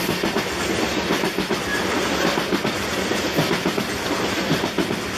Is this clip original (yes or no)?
yes